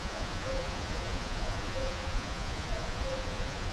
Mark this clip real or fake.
fake